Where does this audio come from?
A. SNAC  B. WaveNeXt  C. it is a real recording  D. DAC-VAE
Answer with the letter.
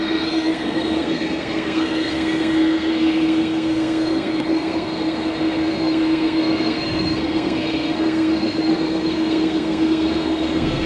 A